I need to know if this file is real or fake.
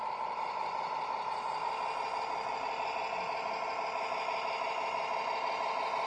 real